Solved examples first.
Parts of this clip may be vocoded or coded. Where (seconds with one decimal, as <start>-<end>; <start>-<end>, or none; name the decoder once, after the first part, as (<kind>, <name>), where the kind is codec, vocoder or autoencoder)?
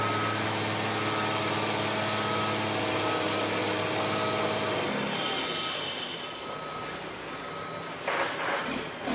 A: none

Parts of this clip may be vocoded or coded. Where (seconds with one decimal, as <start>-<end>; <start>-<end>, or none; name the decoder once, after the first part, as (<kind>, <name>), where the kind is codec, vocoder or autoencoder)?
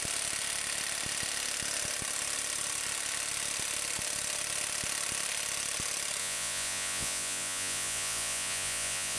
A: 6.2-9.2 (vocoder, Vocos)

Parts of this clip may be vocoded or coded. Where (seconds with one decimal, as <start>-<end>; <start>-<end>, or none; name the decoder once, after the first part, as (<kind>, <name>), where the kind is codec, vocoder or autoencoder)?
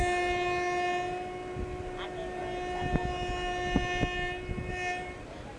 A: none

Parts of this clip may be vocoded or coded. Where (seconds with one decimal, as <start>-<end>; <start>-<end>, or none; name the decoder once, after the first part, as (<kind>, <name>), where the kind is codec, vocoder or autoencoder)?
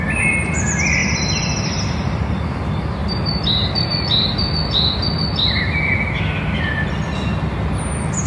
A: none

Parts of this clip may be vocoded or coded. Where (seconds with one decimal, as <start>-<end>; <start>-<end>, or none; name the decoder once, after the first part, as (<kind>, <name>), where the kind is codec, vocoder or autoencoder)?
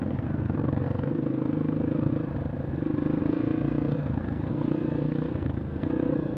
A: 0.0-2.1 (codec, SNAC); 3.2-6.4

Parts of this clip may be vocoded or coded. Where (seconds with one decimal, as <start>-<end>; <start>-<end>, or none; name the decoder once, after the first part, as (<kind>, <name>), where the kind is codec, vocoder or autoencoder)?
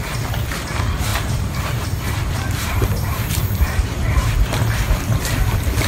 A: 1.1-4.6 (vocoder, BigVGAN v2)